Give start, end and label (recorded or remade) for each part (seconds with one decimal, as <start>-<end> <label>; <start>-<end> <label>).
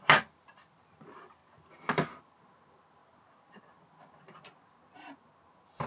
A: 0.0-5.9 recorded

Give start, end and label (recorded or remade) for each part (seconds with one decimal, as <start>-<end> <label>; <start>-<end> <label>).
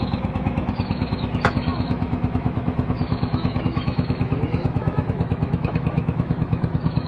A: 0.0-7.1 remade